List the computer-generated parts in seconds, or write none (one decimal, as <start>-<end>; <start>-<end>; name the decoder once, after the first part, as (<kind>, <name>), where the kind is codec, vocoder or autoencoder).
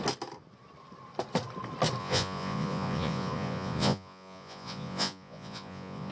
2.0-6.1 (vocoder, Vocos)